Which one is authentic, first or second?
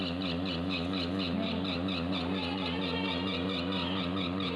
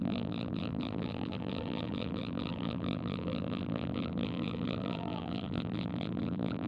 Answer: first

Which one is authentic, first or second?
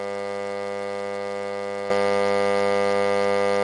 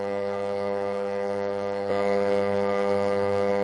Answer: first